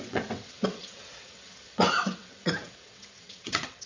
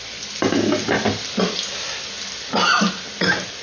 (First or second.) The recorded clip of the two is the second